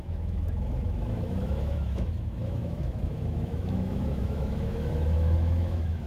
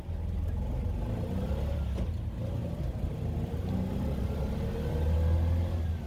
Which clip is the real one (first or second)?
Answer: second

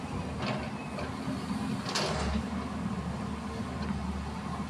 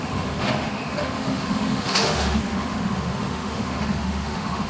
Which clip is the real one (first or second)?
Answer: first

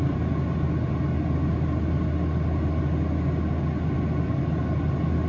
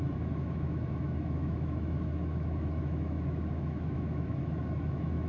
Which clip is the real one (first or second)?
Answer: first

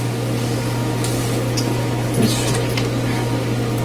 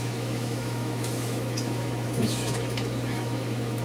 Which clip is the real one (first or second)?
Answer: first